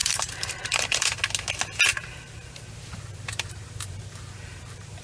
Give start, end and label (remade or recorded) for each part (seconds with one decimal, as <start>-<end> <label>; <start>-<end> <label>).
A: 0.0-1.2 remade; 1.2-1.9 recorded; 1.9-5.0 remade